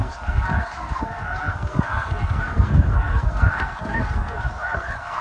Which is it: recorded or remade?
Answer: remade